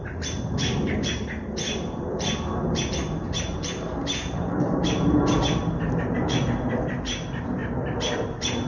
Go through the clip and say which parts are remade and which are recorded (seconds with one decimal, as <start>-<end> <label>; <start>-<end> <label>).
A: 0.0-7.6 remade; 7.6-8.1 recorded; 8.1-8.7 remade

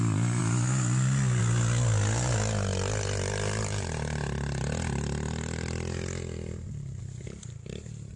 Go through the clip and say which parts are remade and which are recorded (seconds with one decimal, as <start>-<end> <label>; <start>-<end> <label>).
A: 0.0-8.2 recorded

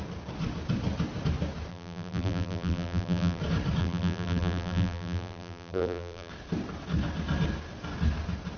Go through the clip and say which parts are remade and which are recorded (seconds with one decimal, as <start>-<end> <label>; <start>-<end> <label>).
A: 0.0-1.7 recorded; 1.7-3.4 remade; 3.4-3.8 recorded; 3.8-6.3 remade; 6.3-8.6 recorded

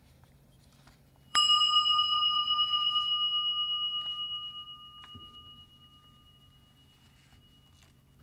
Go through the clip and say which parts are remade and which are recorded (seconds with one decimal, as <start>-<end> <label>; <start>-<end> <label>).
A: 0.0-3.1 remade; 3.1-8.2 recorded